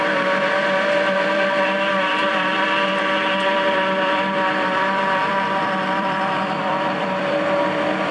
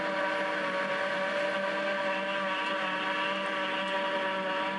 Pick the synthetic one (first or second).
first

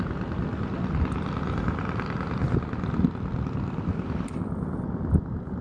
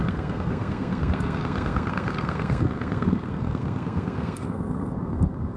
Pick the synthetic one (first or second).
second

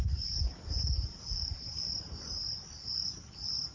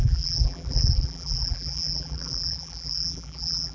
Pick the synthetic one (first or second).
second